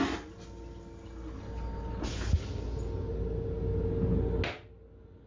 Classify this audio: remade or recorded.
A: recorded